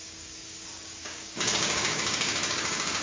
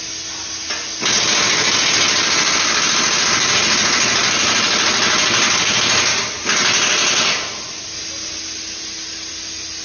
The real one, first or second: second